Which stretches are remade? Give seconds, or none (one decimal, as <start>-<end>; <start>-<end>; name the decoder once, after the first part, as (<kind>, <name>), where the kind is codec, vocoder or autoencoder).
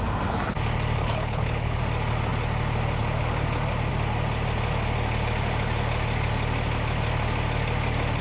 1.0-1.8 (codec, HILCodec)